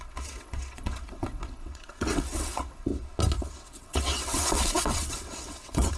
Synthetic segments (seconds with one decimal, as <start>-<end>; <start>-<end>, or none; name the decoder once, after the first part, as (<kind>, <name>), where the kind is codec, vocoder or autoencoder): 0.0-2.9 (vocoder, WaveNeXt); 3.5-6.0